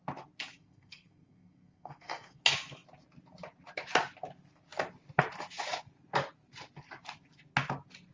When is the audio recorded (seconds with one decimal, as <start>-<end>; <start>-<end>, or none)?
0.0-0.6; 2.4-8.1